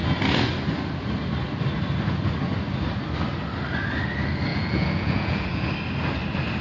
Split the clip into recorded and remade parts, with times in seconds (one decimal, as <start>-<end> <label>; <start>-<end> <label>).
0.0-4.5 recorded; 4.5-5.7 remade; 5.7-6.6 recorded